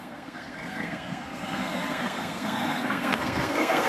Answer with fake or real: fake